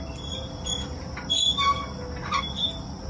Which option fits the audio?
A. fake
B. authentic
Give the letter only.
B